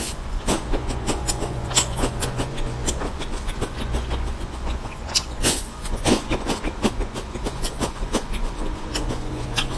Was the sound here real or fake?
fake